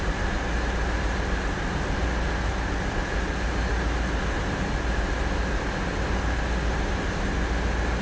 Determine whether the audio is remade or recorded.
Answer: recorded